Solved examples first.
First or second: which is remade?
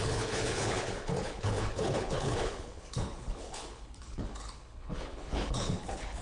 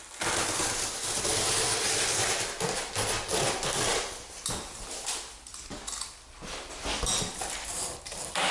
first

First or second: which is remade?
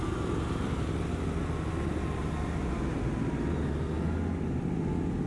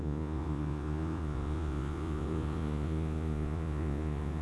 second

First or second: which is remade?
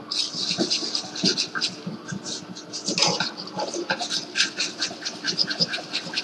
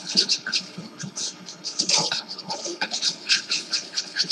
second